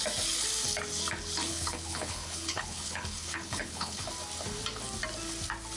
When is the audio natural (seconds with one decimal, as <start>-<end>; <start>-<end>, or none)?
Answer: 0.0-1.5; 4.1-5.8